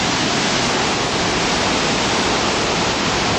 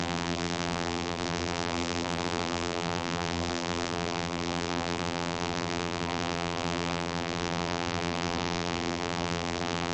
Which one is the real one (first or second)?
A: first